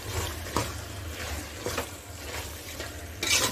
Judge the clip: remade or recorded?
recorded